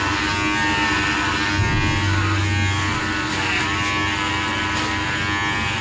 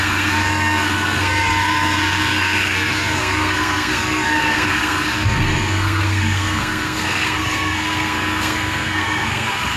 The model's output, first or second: second